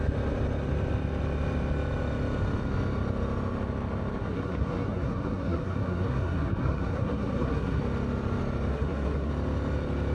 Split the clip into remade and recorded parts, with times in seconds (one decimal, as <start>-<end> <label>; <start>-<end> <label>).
0.0-4.2 recorded; 4.2-7.8 remade; 7.8-8.7 recorded; 8.7-9.3 remade; 9.3-10.1 recorded